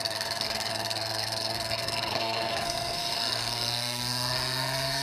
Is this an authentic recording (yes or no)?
no